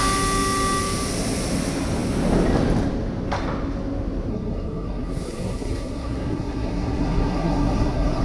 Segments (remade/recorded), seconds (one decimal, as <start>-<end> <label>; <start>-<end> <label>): 0.0-4.3 recorded; 4.3-8.2 remade